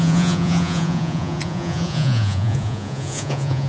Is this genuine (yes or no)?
no